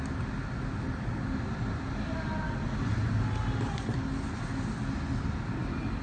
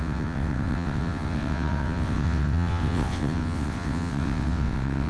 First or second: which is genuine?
first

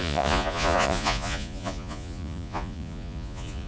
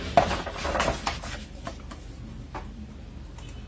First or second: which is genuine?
second